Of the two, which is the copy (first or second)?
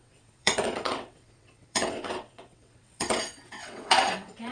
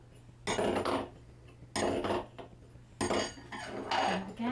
first